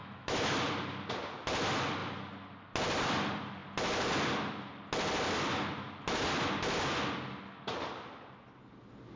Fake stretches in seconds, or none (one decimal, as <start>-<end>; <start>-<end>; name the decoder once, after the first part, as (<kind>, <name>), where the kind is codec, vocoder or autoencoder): 0.0-0.5 (autoencoder, DAC-VAE)